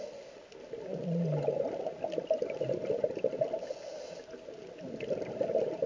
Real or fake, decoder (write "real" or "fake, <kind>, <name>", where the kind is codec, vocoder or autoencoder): real